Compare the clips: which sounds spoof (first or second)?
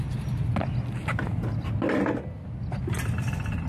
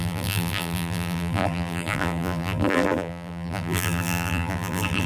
second